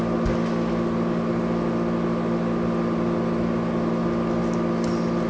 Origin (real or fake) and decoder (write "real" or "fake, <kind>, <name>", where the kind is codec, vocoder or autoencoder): real